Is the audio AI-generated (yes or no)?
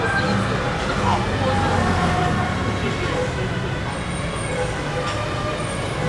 no